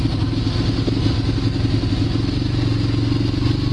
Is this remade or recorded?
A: recorded